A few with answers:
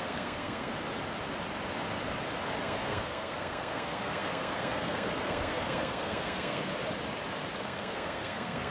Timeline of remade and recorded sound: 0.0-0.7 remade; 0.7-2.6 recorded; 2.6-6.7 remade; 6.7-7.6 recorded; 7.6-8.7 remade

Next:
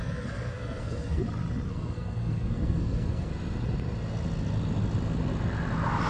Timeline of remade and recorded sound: 0.0-1.2 remade; 1.2-1.7 recorded; 1.7-3.3 remade; 3.3-6.1 recorded

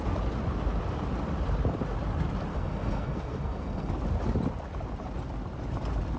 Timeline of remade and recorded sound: 0.0-2.5 recorded; 2.5-3.9 remade; 3.9-6.2 recorded